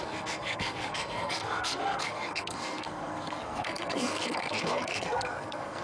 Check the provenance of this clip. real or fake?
fake